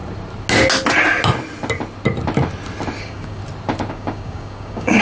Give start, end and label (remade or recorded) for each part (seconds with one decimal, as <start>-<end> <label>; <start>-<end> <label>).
0.0-3.0 recorded; 3.0-3.4 remade; 3.4-3.9 recorded; 3.9-5.0 remade